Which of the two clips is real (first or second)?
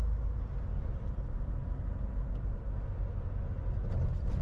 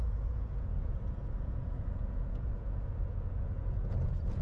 first